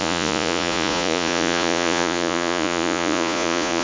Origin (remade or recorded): remade